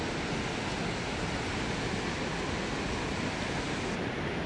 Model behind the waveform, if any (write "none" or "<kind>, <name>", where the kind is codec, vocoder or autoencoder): none